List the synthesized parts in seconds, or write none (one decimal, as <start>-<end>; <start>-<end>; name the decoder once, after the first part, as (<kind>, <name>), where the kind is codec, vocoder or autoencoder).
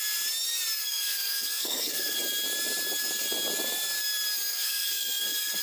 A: 0.8-2.2 (codec, SNAC); 4.5-5.6